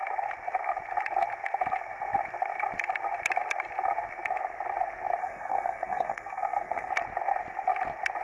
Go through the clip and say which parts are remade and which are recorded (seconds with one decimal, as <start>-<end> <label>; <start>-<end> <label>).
0.0-5.2 recorded; 5.2-6.9 remade; 6.9-8.2 recorded